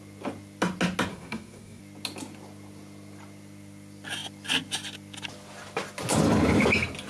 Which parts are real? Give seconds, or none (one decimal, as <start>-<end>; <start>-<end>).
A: 0.0-1.1; 1.8-7.1